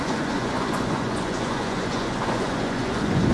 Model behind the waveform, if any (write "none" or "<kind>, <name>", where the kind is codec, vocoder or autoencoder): vocoder, Vocos